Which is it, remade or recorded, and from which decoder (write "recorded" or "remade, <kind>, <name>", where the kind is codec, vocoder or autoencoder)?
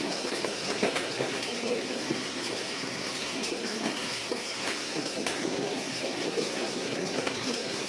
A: remade, codec, SNAC